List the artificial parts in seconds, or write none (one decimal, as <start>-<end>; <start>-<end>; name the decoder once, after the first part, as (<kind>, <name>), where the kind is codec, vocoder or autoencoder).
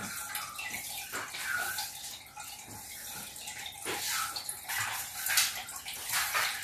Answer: none